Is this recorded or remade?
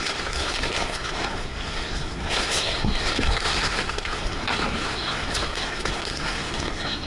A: remade